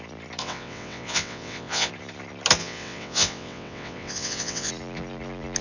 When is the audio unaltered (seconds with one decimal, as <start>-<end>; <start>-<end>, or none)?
0.0-0.4; 1.9-2.6; 4.7-5.6